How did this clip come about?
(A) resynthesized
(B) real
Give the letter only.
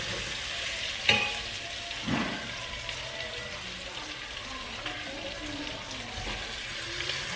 B